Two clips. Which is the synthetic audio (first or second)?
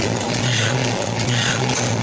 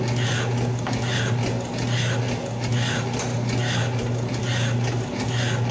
first